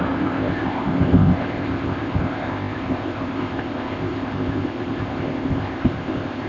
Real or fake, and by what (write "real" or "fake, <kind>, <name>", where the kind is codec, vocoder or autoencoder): fake, codec, ZipCodec